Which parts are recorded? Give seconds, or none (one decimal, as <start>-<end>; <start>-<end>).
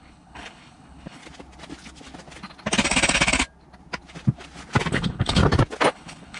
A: 1.2-4.9; 5.4-5.9